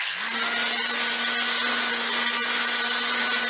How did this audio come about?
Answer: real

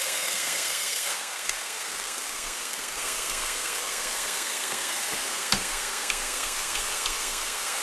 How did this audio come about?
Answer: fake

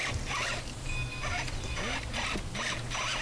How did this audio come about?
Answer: real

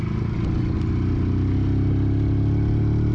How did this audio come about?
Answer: real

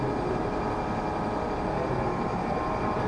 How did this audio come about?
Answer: real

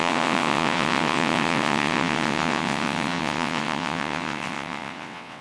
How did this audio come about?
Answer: fake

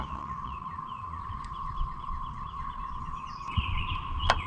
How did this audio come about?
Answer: fake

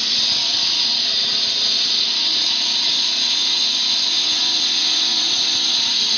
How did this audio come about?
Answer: fake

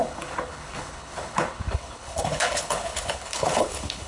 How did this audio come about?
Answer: fake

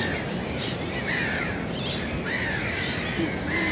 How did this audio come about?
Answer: fake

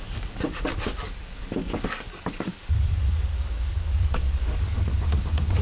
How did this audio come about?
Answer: fake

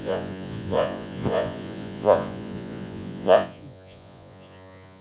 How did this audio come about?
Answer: fake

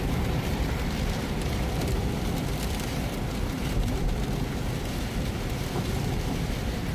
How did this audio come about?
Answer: fake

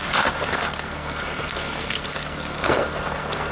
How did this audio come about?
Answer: fake